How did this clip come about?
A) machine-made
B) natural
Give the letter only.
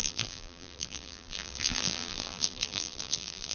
A